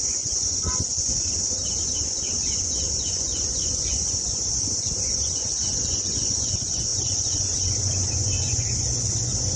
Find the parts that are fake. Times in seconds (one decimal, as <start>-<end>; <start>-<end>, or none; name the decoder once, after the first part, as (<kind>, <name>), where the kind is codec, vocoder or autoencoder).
0.0-9.6 (vocoder, Vocos)